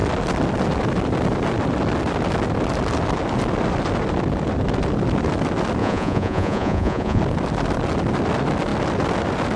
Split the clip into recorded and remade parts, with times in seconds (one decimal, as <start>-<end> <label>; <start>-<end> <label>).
0.0-5.8 recorded; 5.8-7.2 remade; 7.2-9.6 recorded